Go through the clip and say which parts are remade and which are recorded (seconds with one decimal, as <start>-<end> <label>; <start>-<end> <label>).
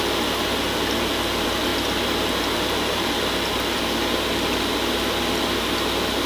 0.0-6.3 recorded